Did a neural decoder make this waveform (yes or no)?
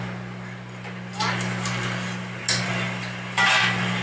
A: no